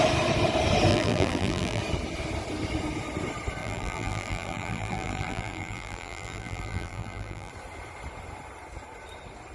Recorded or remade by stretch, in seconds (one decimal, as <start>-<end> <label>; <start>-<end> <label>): 0.0-0.9 recorded; 0.9-1.8 remade; 1.8-3.6 recorded; 3.6-7.5 remade; 7.5-9.5 recorded